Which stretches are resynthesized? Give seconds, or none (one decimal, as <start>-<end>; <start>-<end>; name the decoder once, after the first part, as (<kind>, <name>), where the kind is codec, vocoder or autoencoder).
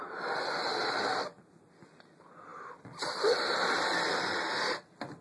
0.8-1.4 (vocoder, BigVGAN v2); 2.5-4.2